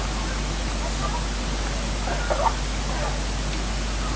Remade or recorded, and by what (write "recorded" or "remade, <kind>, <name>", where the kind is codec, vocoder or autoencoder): recorded